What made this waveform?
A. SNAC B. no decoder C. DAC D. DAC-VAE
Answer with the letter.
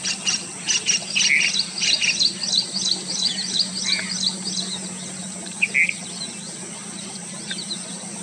B